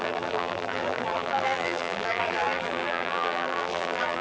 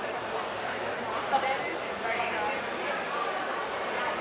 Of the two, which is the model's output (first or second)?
first